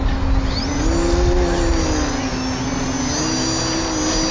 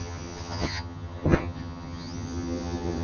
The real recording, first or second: first